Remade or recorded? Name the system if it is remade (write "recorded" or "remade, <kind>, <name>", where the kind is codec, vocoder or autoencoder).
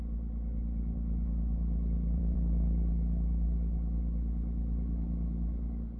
remade, vocoder, BigVGAN v2